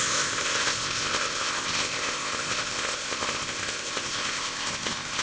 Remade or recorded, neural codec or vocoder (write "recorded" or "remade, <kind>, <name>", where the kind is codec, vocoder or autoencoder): remade, codec, ZipCodec